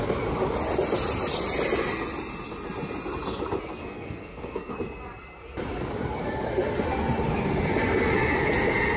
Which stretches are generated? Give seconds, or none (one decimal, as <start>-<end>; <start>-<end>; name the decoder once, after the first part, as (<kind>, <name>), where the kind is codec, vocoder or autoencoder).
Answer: 3.8-4.7 (codec, SNAC)